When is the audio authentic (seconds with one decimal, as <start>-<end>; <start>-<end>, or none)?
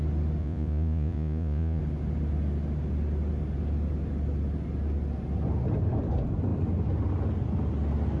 0.0-0.4; 1.8-8.2